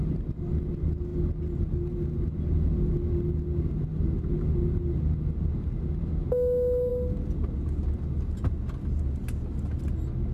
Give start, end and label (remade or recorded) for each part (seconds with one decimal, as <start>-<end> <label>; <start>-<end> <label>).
0.0-10.3 recorded